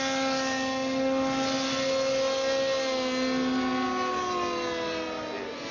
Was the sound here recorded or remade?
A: recorded